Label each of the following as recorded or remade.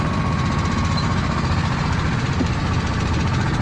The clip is recorded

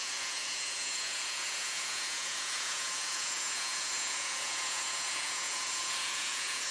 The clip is remade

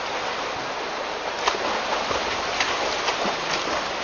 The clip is recorded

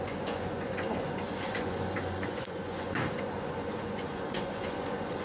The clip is remade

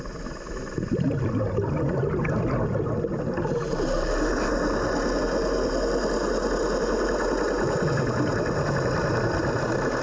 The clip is recorded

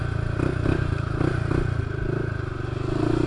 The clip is recorded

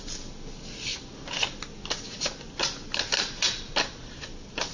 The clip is recorded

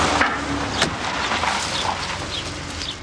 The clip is recorded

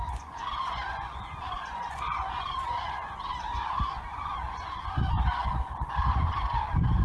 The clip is remade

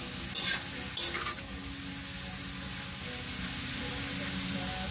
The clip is recorded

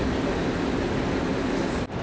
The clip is recorded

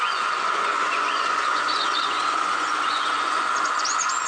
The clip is remade